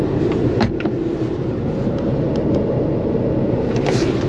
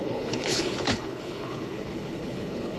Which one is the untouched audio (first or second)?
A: first